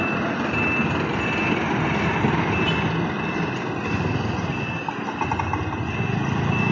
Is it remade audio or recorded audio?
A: recorded